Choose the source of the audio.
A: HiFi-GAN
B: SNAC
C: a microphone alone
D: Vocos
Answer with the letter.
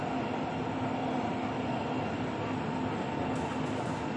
C